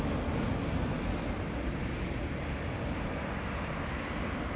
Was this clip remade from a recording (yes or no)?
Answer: no